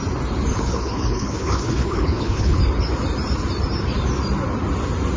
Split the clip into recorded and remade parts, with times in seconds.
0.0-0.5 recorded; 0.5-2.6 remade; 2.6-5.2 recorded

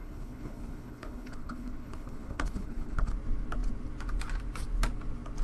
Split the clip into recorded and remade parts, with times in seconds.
0.0-3.1 remade; 3.1-5.4 recorded

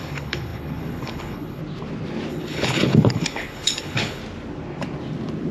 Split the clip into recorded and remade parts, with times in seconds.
0.0-1.6 remade; 1.6-2.3 recorded; 2.3-4.2 remade; 4.2-5.5 recorded

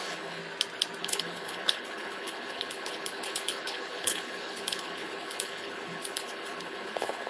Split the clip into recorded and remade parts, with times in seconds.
0.0-0.4 remade; 0.4-1.0 recorded; 1.0-7.3 remade

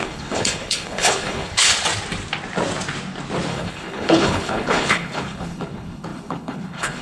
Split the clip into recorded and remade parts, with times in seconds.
0.0-1.7 remade; 1.7-3.5 recorded; 3.5-7.0 remade

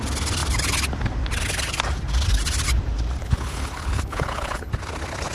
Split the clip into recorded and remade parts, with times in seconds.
0.0-3.2 recorded; 3.2-4.7 remade; 4.7-5.3 recorded